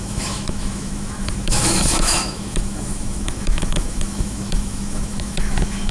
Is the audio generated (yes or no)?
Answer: yes